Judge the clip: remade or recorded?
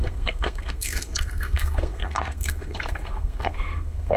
remade